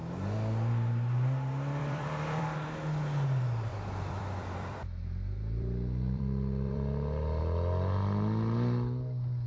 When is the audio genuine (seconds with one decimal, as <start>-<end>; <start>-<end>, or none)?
0.0-1.8; 2.4-3.7; 7.4-9.5